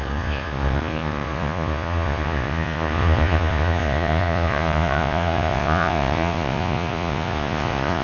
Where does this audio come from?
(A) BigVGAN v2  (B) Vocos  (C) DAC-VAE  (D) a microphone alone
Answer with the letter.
B